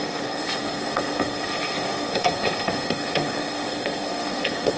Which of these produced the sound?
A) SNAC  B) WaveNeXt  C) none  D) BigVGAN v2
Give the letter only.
A